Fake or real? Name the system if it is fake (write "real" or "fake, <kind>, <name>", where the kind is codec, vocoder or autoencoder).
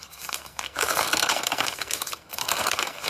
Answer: fake, codec, SNAC